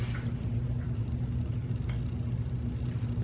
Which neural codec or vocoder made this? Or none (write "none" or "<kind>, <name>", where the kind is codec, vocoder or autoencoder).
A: none